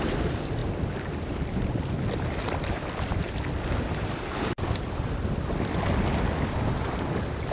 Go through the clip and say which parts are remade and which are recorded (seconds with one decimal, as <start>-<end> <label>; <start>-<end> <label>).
0.0-7.5 recorded